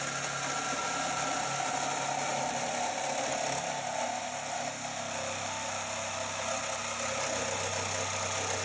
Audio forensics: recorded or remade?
recorded